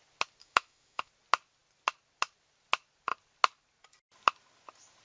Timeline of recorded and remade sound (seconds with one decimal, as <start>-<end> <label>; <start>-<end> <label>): 0.0-0.4 recorded; 0.4-1.1 remade; 1.1-5.0 recorded